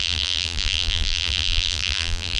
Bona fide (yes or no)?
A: no